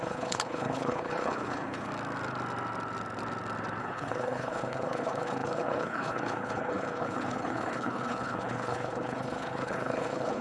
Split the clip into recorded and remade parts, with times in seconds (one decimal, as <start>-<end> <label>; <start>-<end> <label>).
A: 0.0-1.9 remade; 1.9-3.8 recorded; 3.8-10.4 remade